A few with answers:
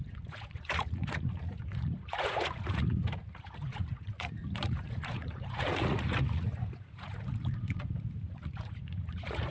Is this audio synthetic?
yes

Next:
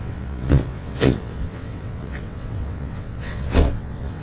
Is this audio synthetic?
yes